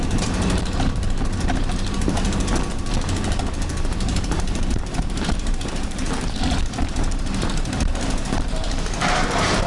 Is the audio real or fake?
fake